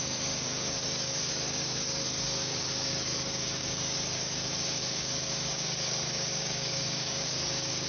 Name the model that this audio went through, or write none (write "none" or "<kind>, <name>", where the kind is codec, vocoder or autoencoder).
codec, DAC